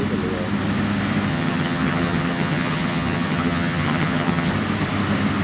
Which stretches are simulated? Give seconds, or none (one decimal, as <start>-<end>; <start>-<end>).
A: 1.3-4.5